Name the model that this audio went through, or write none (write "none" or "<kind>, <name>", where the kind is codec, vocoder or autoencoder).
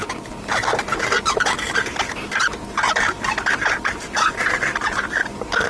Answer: none